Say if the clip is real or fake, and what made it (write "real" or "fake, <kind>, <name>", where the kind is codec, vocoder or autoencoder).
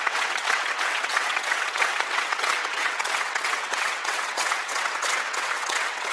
fake, vocoder, WaveNeXt